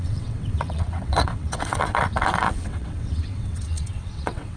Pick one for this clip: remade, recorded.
remade